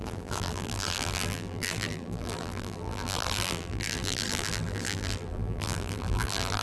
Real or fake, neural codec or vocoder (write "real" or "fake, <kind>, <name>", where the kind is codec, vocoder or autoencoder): fake, vocoder, BigVGAN v2